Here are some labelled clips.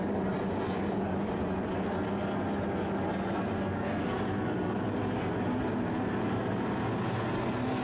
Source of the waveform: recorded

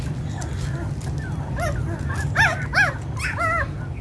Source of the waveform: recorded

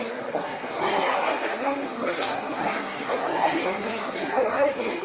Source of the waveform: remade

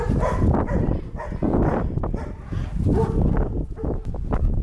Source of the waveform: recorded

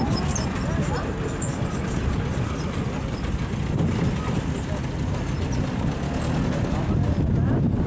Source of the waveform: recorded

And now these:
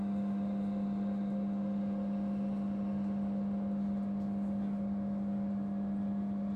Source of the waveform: recorded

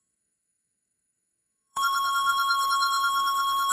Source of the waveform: remade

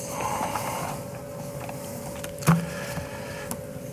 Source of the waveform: recorded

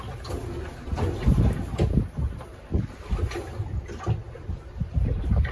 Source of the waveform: recorded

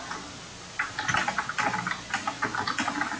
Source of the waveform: recorded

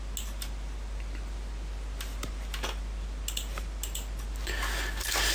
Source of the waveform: recorded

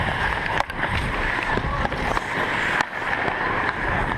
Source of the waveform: recorded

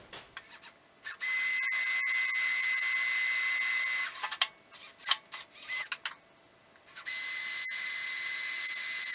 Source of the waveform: recorded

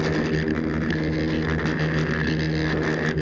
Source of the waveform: recorded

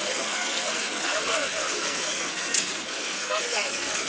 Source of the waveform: remade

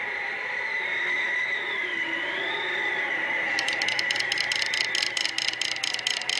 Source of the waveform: recorded